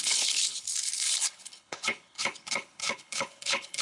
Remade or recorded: remade